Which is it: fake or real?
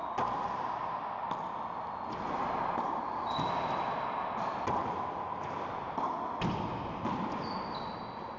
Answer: real